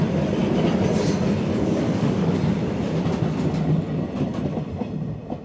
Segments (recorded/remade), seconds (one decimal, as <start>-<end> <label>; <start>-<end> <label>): 0.0-1.6 recorded; 1.6-2.4 remade; 2.4-5.4 recorded